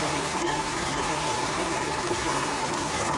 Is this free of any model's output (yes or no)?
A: no